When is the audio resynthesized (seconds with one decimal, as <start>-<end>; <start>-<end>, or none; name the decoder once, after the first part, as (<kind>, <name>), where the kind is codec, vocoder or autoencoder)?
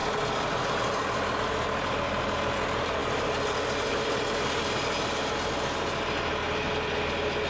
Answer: none